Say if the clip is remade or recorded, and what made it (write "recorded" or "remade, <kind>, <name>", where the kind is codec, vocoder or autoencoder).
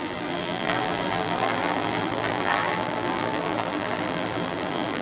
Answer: remade, vocoder, BigVGAN v2